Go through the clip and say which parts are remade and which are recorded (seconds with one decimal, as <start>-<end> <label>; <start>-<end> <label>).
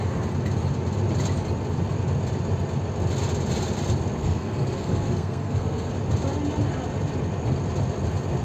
0.0-4.2 recorded; 4.2-5.9 remade; 5.9-8.4 recorded